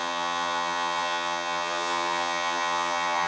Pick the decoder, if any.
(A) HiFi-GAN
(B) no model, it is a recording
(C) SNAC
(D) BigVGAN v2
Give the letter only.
A